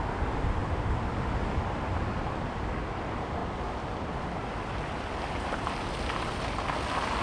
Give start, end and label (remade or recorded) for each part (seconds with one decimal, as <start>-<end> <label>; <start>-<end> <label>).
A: 0.0-7.2 recorded